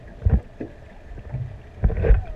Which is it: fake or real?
real